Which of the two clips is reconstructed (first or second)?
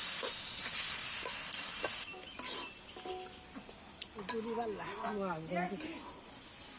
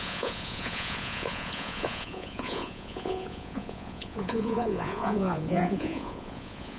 second